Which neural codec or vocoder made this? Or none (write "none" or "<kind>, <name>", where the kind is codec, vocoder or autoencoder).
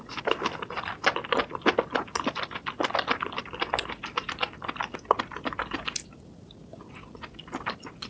none